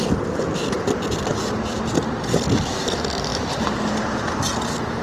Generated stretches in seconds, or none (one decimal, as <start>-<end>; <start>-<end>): 1.3-2.0; 3.3-3.9